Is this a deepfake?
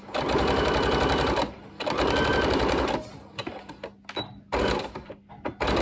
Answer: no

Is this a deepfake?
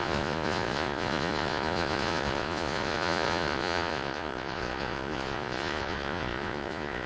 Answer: yes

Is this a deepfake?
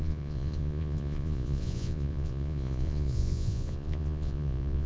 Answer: yes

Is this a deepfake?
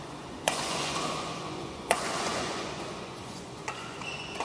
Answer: yes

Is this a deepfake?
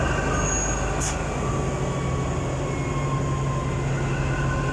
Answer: no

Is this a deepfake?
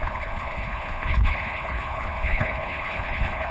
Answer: yes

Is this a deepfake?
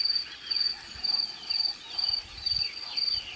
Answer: no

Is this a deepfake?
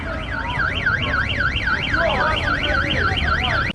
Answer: no